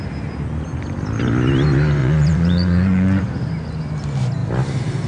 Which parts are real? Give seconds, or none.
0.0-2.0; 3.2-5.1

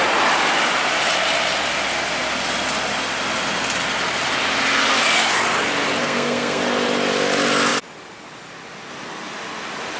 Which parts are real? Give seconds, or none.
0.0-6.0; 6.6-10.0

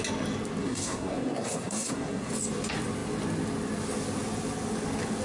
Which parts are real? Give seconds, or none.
0.0-0.6; 2.3-5.2

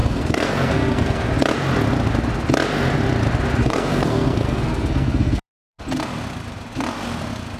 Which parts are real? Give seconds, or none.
1.3-3.6; 5.8-7.6